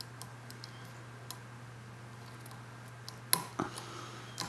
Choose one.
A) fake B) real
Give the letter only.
B